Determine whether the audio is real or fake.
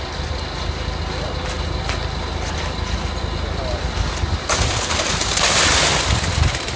real